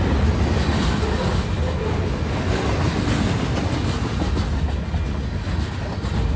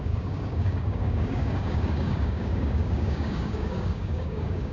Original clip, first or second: first